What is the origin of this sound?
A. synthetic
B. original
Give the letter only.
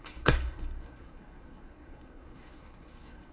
A